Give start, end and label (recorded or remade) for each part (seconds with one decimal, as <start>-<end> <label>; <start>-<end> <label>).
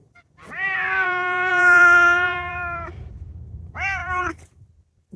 0.0-5.2 remade